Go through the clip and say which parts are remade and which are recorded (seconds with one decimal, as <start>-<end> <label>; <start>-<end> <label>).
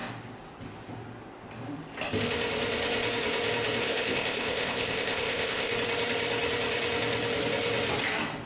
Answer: 0.0-3.8 recorded; 3.8-5.7 remade; 5.7-8.5 recorded